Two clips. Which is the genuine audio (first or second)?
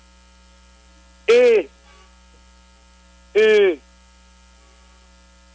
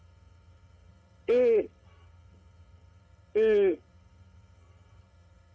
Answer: first